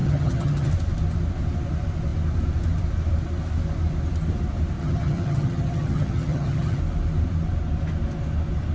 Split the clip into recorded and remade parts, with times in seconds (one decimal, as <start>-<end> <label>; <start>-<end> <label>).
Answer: 0.0-0.7 remade; 0.7-4.8 recorded; 4.8-6.8 remade; 6.8-8.7 recorded